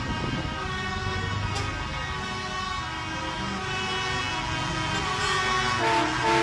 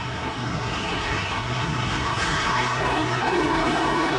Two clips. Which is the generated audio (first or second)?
second